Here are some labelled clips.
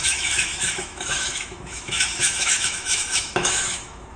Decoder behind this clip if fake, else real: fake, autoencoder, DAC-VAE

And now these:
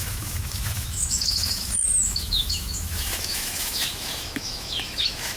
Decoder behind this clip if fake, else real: fake, autoencoder, DAC-VAE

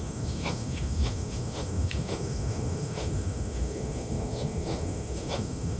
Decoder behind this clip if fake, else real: fake, autoencoder, DAC-VAE